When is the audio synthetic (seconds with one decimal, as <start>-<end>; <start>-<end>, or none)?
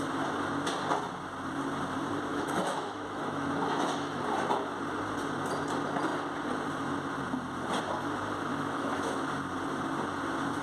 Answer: 2.3-4.2; 8.5-9.3